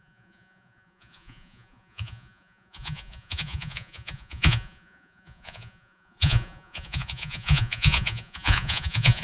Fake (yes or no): yes